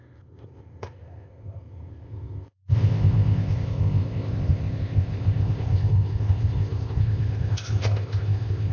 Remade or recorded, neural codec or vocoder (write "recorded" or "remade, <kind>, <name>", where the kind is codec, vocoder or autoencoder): remade, codec, ZipCodec